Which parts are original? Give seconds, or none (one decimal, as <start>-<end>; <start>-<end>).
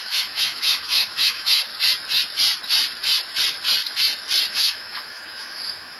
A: 1.7-4.5